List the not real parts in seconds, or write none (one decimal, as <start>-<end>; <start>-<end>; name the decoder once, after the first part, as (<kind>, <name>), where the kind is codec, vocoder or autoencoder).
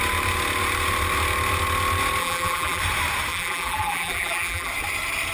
2.2-2.8 (vocoder, BigVGAN v2); 3.3-4.7